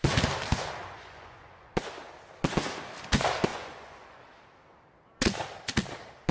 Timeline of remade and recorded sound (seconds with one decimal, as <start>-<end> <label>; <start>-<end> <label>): 0.0-0.8 recorded; 0.8-1.7 remade; 1.7-3.5 recorded; 3.5-4.2 remade; 4.2-6.3 recorded